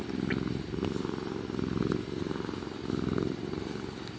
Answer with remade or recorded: recorded